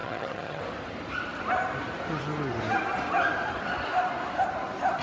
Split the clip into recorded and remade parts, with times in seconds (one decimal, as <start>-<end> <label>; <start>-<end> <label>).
0.0-0.6 remade; 0.6-5.0 recorded